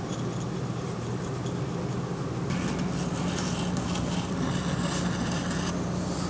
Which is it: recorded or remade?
recorded